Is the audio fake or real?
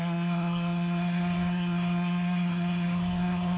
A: fake